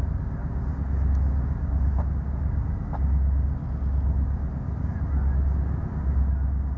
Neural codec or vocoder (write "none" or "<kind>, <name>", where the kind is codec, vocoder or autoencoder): none